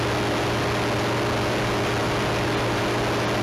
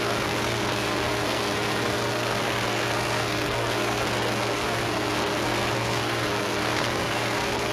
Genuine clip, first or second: first